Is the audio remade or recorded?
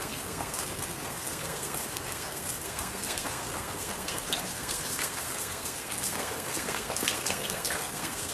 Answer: remade